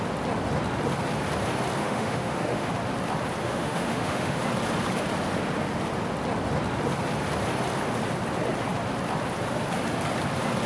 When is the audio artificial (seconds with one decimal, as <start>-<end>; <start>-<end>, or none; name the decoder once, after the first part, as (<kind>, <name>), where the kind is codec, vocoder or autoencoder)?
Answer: 1.8-2.7 (autoencoder, DAC-VAE); 3.4-4.4